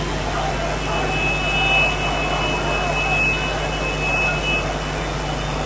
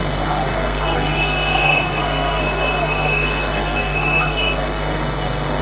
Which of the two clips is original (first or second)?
first